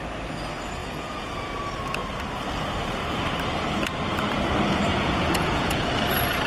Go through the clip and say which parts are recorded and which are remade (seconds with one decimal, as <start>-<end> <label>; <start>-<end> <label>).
0.0-0.8 recorded; 0.8-1.3 remade; 1.3-4.9 recorded; 4.9-5.9 remade; 5.9-6.5 recorded